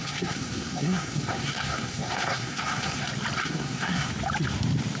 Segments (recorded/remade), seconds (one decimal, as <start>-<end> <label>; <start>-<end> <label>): 0.0-3.0 remade; 3.0-3.4 recorded; 3.4-4.1 remade; 4.1-5.0 recorded